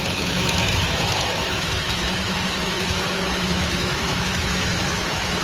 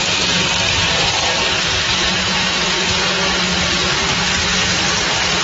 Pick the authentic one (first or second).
second